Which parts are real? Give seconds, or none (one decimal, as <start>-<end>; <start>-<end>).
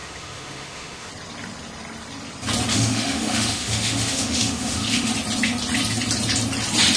1.1-2.7; 5.1-7.0